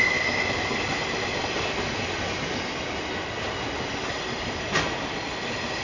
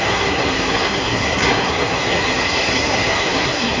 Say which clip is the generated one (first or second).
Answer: second